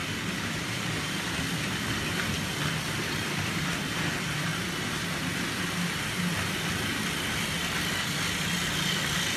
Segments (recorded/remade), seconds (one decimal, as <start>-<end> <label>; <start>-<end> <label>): 0.0-3.6 remade; 3.6-9.4 recorded